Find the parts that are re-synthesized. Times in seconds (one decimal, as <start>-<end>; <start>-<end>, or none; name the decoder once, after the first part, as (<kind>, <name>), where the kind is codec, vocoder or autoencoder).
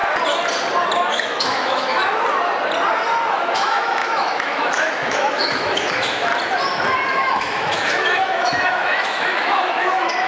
1.1-2.0 (autoencoder, DAC-VAE); 3.3-6.3; 7.1-10.3